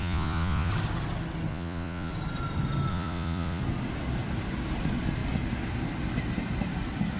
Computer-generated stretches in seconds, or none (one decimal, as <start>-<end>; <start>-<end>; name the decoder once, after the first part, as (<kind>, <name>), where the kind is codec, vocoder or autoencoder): 0.0-0.7 (vocoder, Vocos); 1.5-2.1; 2.9-3.6